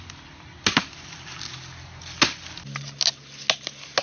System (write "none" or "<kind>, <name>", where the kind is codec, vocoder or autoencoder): none